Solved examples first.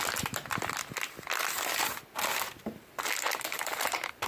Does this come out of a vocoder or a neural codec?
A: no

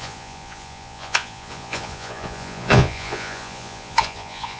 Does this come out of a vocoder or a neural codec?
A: yes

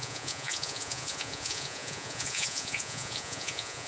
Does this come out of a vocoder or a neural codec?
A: yes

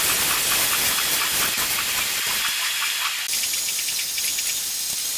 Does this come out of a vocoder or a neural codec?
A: no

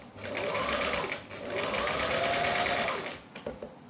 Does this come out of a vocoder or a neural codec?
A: no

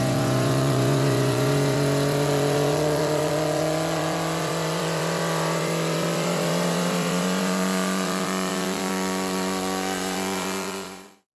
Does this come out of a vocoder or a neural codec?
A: yes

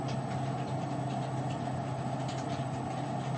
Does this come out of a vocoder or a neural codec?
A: no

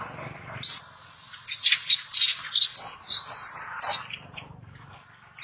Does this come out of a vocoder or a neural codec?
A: no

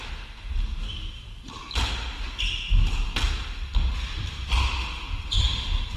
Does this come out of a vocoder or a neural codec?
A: no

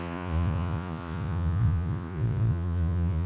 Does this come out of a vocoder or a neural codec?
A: yes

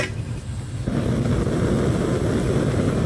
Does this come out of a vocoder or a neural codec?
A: no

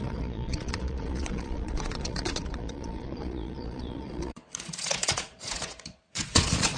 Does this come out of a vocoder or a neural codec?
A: yes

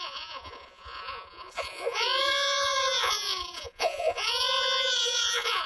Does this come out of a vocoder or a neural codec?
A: yes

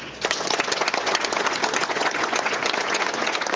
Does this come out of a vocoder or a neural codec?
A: yes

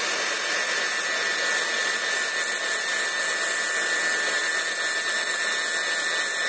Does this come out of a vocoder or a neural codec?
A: no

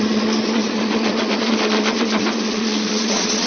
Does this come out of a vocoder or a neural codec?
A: yes